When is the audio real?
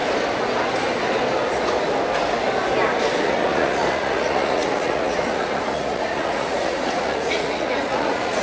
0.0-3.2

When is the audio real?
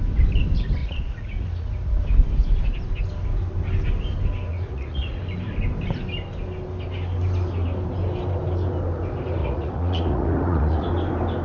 0.0-0.8; 2.0-4.5; 5.2-9.4; 10.9-11.4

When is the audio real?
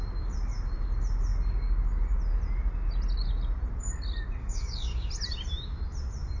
0.0-4.4; 5.1-6.4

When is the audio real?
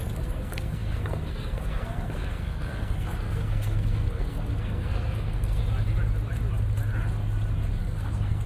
5.6-7.8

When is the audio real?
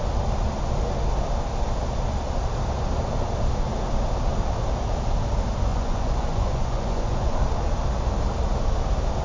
0.0-5.7; 7.4-9.2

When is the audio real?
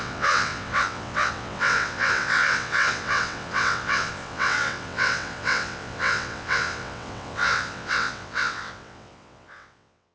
none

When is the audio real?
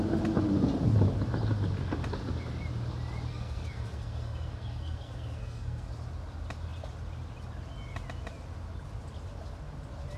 0.0-3.3; 5.9-10.2